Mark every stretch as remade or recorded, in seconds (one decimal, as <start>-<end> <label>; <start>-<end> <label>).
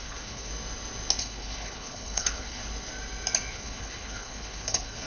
0.0-0.5 remade; 0.5-1.2 recorded; 1.2-2.6 remade; 2.6-3.5 recorded; 3.5-5.1 remade